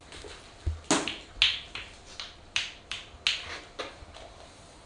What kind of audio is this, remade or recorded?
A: recorded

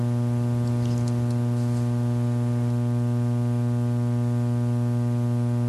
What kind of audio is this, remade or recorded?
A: recorded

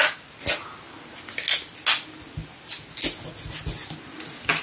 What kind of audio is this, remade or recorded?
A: recorded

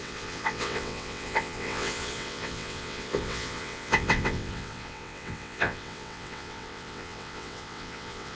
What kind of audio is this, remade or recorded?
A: remade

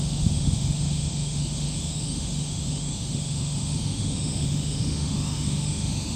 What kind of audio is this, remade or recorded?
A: remade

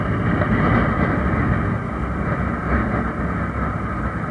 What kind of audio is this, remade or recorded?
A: recorded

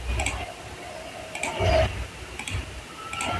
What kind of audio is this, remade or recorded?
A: recorded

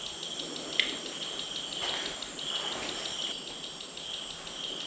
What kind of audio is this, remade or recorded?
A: recorded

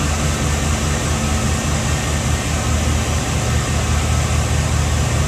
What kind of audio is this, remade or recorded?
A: recorded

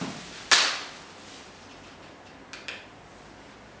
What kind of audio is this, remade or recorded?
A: recorded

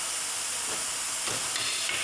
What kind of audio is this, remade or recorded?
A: recorded